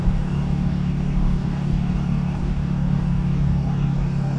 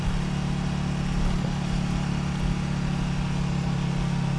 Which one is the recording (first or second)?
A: second